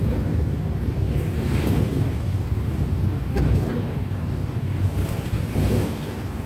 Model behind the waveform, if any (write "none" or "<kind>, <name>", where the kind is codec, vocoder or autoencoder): codec, DAC